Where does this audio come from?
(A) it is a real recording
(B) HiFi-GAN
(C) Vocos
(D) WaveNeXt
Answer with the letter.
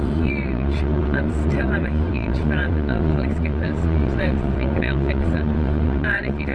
C